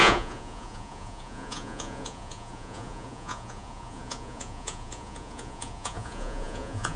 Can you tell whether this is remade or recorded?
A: remade